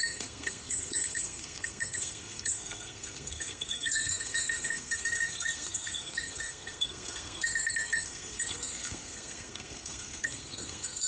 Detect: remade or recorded remade